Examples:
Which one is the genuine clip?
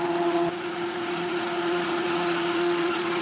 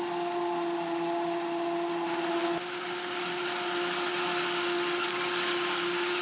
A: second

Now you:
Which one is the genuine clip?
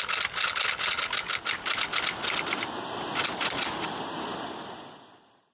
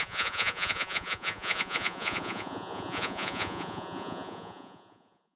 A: first